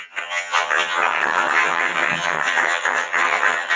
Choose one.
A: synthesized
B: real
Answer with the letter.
A